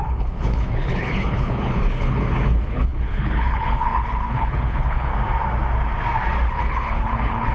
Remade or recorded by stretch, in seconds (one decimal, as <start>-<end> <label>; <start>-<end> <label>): 0.0-5.1 remade; 5.1-6.5 recorded; 6.5-7.5 remade